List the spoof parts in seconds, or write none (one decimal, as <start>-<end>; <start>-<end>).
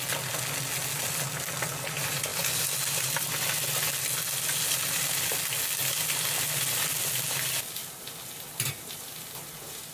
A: none